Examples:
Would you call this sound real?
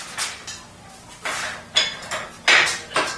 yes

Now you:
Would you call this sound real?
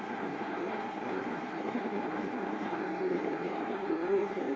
no